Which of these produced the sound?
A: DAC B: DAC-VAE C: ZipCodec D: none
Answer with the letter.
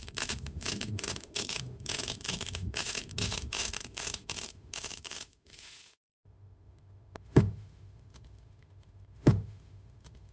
B